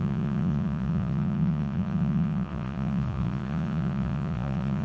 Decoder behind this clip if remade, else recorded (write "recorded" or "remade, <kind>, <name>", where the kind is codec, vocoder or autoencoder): remade, vocoder, Vocos